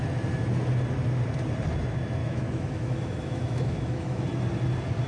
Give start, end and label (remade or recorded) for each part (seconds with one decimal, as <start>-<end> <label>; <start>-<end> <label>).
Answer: 0.0-2.2 recorded; 2.2-4.2 remade; 4.2-5.1 recorded